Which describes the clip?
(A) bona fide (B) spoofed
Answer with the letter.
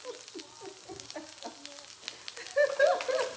A